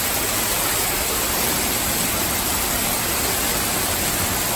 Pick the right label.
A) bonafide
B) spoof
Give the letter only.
A